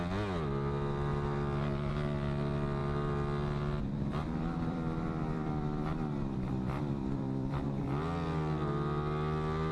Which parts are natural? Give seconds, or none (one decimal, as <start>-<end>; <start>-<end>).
0.0-4.2; 7.8-9.7